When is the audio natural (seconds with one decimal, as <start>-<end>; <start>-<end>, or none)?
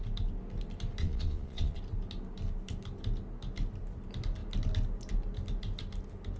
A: 0.0-1.0; 1.8-6.4